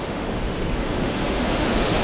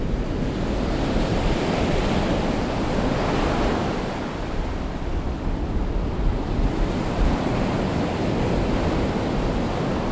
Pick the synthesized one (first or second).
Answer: first